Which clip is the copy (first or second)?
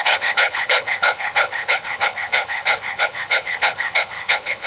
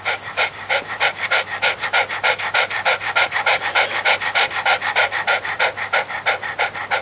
first